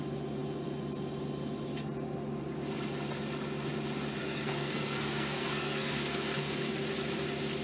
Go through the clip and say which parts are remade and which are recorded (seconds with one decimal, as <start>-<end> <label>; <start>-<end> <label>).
0.0-4.2 recorded; 4.2-6.7 remade; 6.7-7.6 recorded